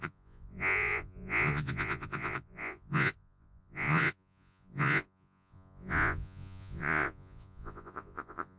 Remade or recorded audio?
remade